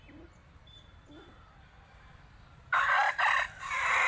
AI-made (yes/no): yes